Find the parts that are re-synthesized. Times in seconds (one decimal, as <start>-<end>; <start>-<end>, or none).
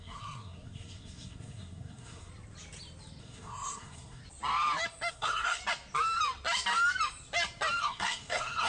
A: 0.0-2.3; 3.2-4.2; 5.1-5.6; 7.8-8.7